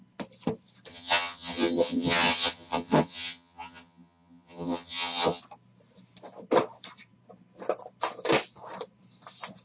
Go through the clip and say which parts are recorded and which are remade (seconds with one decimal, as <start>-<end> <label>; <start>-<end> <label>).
0.0-0.9 recorded; 0.9-5.4 remade; 5.4-9.6 recorded